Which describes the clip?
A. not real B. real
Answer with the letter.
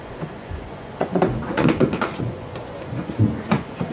A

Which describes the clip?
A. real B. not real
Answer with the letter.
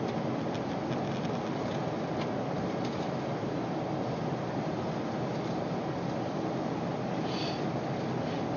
A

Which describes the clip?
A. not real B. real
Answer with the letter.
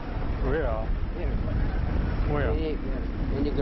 B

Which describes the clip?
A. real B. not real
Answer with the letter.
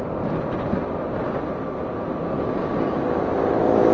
A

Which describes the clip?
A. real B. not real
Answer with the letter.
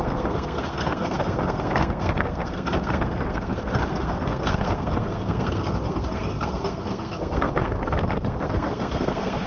B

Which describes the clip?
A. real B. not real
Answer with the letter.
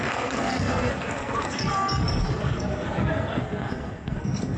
B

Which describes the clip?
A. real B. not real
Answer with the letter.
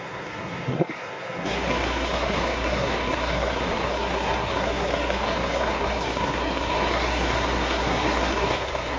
B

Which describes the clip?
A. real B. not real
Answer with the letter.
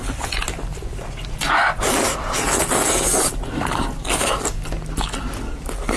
A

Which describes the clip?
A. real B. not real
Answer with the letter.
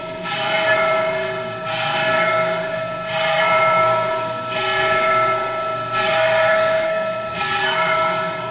B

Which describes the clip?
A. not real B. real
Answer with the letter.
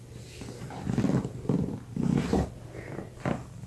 B